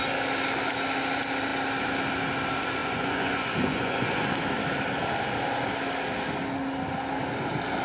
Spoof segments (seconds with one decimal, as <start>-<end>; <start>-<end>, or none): 2.8-4.3